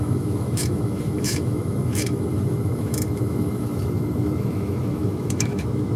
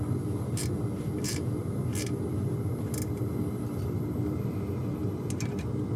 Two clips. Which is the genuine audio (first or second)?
second